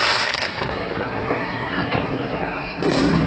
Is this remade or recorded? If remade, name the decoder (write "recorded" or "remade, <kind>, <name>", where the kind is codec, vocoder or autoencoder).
remade, codec, SNAC